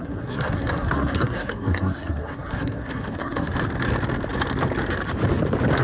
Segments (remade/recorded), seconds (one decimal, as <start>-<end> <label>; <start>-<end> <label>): 0.0-3.5 remade; 3.5-5.8 recorded